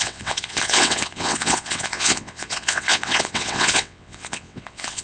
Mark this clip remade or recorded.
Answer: remade